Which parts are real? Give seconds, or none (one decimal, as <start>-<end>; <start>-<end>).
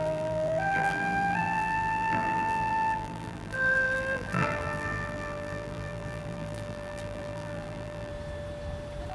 8.1-9.1